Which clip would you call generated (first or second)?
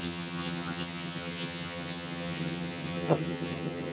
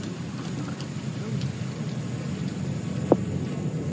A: first